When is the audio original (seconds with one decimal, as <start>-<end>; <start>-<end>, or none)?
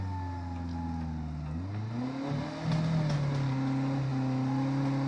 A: 0.0-5.1